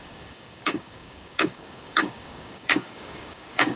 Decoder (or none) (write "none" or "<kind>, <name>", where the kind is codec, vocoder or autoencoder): codec, DAC